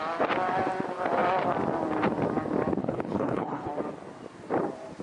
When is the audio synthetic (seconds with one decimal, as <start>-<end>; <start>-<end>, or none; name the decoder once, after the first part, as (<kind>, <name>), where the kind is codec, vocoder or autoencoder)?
2.8-3.7 (codec, HILCodec)